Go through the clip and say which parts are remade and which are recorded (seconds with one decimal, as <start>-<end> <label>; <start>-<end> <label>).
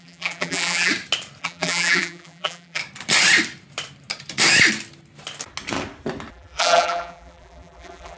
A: 0.0-0.9 remade; 0.9-1.4 recorded; 1.4-2.8 remade; 2.8-6.3 recorded; 6.3-8.2 remade